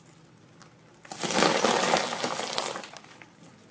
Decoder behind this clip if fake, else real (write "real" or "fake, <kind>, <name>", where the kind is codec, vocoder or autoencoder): real